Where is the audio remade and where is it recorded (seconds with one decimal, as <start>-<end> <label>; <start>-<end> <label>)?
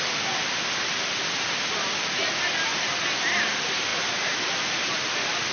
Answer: 0.0-5.5 recorded